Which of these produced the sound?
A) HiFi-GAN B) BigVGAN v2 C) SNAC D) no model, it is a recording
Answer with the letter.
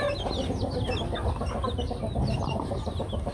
D